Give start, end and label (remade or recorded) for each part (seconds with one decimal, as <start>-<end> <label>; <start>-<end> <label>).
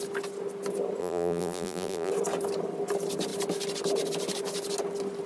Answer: 0.0-1.0 recorded; 1.0-2.1 remade; 2.1-5.3 recorded